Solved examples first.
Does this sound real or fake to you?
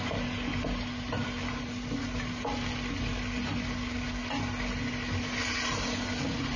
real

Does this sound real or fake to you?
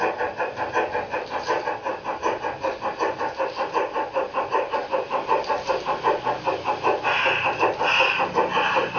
real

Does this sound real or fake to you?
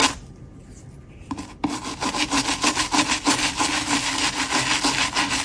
real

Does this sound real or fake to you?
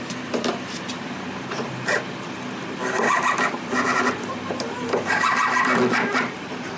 real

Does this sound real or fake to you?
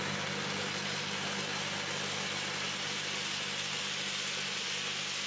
real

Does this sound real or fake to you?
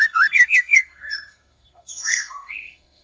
fake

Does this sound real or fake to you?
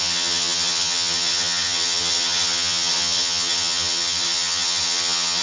fake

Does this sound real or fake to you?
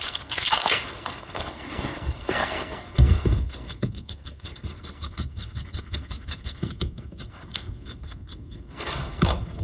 fake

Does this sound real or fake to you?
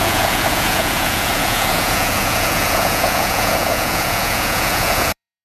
fake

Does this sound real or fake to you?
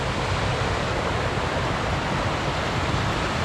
real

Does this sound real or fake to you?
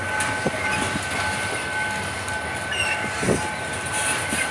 real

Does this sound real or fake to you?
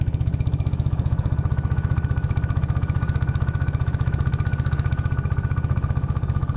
fake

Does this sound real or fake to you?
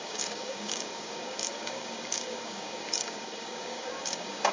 fake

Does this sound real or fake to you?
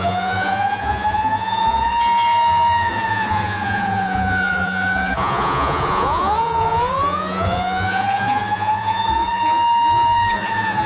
fake